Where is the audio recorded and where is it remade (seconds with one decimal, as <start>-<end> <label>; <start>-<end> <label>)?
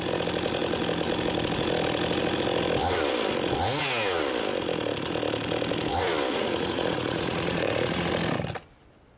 0.0-6.3 recorded; 6.3-8.1 remade; 8.1-9.2 recorded